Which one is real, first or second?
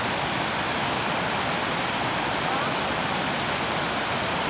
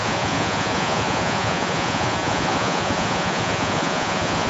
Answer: first